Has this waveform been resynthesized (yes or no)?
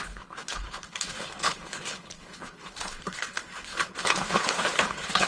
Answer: yes